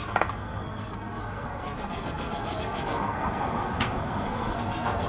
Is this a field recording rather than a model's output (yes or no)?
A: no